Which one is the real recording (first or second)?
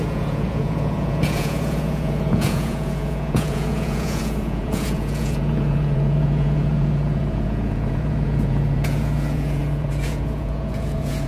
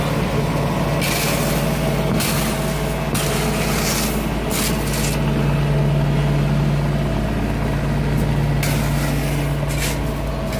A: second